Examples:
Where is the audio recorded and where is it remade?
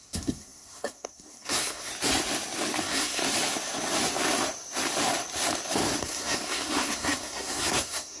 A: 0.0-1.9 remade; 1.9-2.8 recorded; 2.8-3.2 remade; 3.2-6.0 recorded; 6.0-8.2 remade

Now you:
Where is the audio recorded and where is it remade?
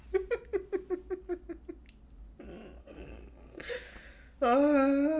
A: 0.0-2.8 recorded; 2.8-3.7 remade; 3.7-5.2 recorded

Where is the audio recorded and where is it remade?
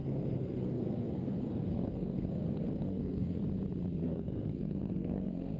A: 0.0-3.4 remade; 3.4-4.0 recorded; 4.0-5.6 remade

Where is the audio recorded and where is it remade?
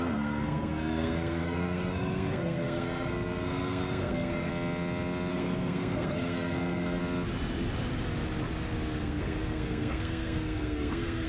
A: 0.0-4.5 remade; 4.5-5.3 recorded; 5.3-7.0 remade; 7.0-9.0 recorded; 9.0-11.3 remade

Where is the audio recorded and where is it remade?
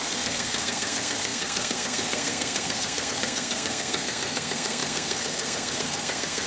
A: 0.0-6.5 remade